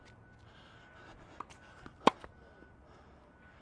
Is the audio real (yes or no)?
yes